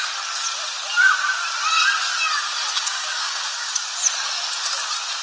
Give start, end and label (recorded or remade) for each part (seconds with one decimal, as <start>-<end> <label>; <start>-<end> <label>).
0.0-2.8 recorded; 2.8-3.8 remade; 3.8-5.2 recorded